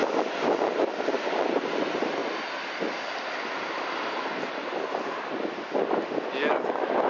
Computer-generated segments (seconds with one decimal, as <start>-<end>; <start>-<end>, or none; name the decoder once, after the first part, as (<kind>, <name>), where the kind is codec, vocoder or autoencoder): none